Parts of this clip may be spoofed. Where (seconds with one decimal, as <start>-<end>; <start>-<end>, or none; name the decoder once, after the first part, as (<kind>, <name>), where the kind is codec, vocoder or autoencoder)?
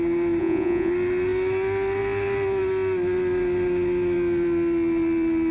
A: 0.4-0.9 (vocoder, Vocos)